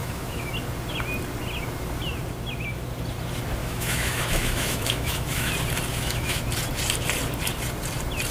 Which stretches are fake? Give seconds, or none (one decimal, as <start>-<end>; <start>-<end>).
0.0-0.5; 3.6-5.5; 5.9-6.4